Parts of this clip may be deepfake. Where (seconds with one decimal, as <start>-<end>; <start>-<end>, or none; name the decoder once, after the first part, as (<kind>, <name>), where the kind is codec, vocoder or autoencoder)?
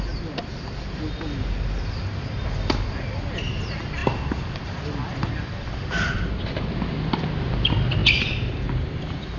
none